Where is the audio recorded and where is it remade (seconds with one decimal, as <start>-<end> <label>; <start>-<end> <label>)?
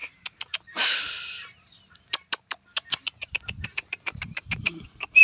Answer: 0.0-1.0 remade; 1.0-5.2 recorded